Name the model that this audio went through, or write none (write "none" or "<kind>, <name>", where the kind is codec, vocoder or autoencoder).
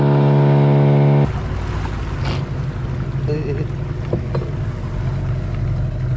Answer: none